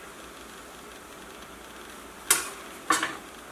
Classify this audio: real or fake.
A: real